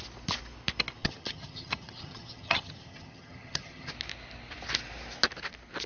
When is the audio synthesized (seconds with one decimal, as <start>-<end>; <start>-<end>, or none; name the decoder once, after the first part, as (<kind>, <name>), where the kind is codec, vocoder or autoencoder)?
1.0-3.9 (vocoder, HiFi-GAN)